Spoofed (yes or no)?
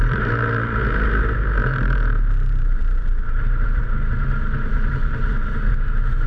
yes